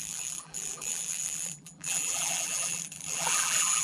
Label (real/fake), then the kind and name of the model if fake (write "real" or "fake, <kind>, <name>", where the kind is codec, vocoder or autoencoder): fake, vocoder, BigVGAN v2